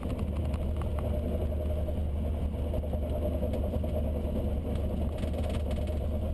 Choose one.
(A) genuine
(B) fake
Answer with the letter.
A